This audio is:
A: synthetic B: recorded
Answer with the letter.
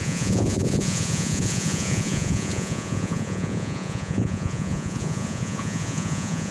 A